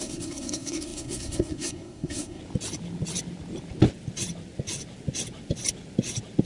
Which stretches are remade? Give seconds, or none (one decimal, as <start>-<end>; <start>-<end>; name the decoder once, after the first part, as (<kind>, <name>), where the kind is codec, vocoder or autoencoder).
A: 0.0-2.4 (codec, SNAC)